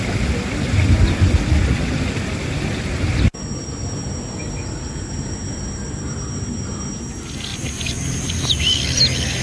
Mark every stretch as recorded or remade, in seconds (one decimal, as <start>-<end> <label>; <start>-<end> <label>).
0.0-4.0 recorded; 4.0-6.9 remade; 6.9-7.5 recorded; 7.5-8.5 remade; 8.5-9.4 recorded